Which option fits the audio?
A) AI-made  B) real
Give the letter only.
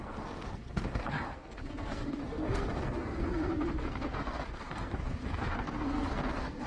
A